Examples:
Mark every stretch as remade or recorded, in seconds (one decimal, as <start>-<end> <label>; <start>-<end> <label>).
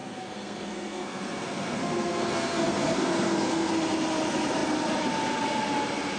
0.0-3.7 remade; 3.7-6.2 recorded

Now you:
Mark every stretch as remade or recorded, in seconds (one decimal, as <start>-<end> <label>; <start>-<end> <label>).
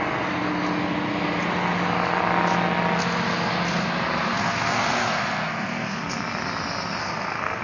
0.0-4.3 recorded; 4.3-6.0 remade; 6.0-7.0 recorded; 7.0-7.6 remade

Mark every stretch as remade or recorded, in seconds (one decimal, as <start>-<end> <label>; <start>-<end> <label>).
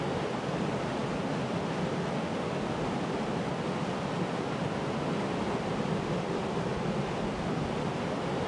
0.0-8.5 recorded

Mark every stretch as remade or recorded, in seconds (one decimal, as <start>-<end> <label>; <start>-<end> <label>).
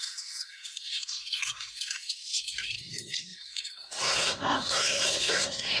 0.0-5.8 remade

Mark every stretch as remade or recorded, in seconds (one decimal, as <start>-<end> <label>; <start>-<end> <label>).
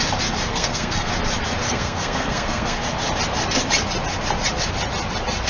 0.0-0.5 recorded; 0.5-1.1 remade; 1.1-1.6 recorded; 1.6-2.8 remade; 2.8-5.5 recorded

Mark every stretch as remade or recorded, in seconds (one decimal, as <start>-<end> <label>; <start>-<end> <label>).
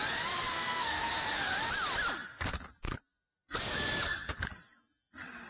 0.0-0.5 recorded; 0.5-1.1 remade; 1.1-5.5 recorded